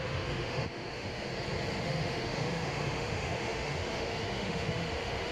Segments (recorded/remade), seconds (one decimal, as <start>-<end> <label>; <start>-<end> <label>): 0.0-1.3 remade; 1.3-1.8 recorded; 1.8-5.3 remade

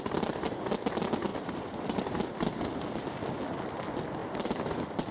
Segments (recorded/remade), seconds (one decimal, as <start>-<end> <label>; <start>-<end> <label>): 0.0-5.1 recorded

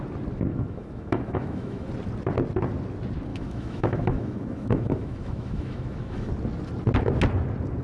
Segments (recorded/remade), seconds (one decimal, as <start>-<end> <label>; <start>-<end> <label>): 0.0-0.5 recorded; 0.5-1.9 remade; 1.9-3.3 recorded; 3.3-6.3 remade; 6.3-7.8 recorded

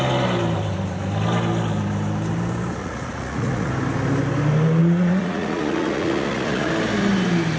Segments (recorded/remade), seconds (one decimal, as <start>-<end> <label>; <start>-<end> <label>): 0.0-2.8 recorded; 2.8-3.7 remade; 3.7-4.8 recorded; 4.8-6.7 remade; 6.7-7.6 recorded